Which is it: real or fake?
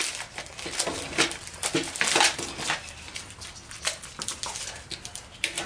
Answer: real